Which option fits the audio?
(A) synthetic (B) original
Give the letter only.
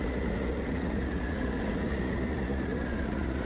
A